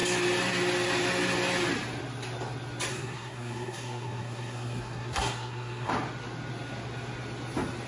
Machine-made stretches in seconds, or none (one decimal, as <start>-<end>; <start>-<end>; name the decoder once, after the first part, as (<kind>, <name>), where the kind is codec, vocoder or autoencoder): 2.9-5.9 (codec, SNAC)